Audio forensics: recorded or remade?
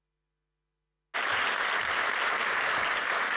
recorded